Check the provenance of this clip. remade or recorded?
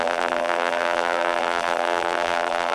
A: remade